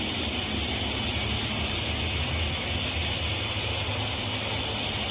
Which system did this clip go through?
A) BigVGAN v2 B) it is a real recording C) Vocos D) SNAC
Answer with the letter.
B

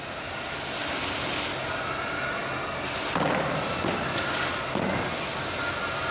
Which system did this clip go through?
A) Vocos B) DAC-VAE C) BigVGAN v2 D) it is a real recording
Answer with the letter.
D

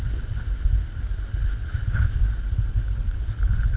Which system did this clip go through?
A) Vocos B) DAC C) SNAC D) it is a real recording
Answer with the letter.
D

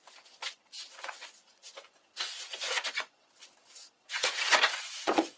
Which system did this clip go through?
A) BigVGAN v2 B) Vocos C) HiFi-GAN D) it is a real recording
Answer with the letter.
B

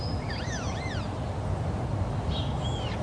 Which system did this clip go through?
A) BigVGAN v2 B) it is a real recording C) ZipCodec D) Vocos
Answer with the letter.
B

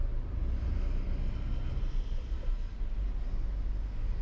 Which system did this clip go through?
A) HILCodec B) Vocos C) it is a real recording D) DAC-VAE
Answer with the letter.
C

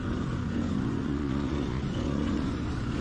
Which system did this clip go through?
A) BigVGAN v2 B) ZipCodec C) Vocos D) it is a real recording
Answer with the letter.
C